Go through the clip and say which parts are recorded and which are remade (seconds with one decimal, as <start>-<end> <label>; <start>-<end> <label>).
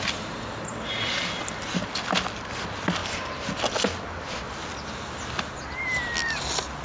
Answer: 0.0-3.0 recorded; 3.0-3.5 remade; 3.5-6.8 recorded